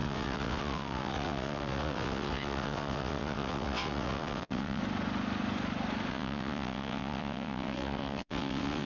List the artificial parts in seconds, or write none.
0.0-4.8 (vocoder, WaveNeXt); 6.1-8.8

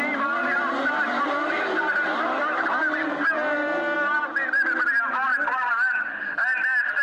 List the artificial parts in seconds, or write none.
0.4-4.2 (vocoder, BigVGAN v2); 5.3-5.9